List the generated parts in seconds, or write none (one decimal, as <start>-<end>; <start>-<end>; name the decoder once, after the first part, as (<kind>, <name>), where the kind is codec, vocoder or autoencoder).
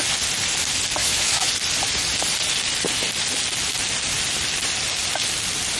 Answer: 1.0-1.5 (autoencoder, DAC-VAE)